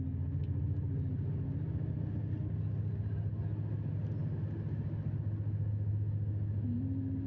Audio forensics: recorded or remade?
recorded